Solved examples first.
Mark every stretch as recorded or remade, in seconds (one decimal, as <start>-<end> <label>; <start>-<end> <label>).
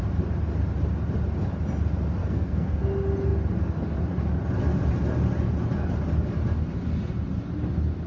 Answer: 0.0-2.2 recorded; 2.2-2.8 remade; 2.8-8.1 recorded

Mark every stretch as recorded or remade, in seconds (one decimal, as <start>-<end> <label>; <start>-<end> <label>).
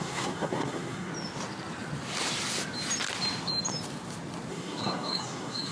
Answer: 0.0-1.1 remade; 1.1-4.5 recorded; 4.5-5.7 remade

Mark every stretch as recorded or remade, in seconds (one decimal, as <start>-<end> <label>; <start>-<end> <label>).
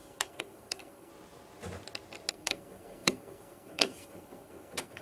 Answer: 0.0-1.1 remade; 1.1-2.3 recorded; 2.3-5.0 remade